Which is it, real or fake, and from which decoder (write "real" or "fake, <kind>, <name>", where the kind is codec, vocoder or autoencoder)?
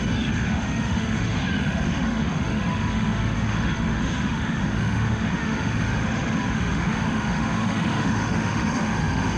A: fake, autoencoder, DAC-VAE